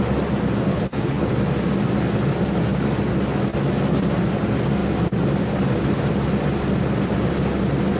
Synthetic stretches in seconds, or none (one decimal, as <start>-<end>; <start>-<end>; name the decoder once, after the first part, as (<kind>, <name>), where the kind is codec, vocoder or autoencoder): 0.7-1.3 (codec, HILCodec)